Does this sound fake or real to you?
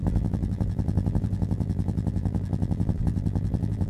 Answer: fake